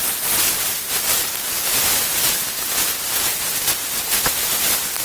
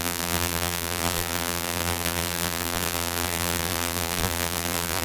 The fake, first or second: second